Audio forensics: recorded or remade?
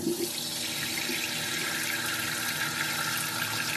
recorded